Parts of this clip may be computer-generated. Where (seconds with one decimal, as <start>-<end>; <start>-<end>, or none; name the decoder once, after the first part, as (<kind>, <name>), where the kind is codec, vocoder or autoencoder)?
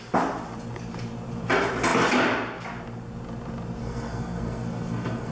3.8-5.3 (codec, SNAC)